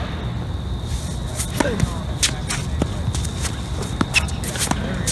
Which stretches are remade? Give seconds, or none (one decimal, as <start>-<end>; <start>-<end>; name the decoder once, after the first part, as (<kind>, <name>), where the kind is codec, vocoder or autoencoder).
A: none